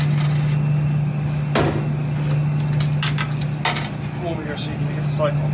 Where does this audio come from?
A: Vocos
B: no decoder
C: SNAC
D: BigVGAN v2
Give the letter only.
B